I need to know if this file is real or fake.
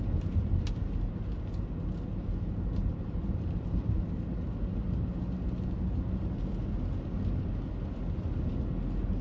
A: real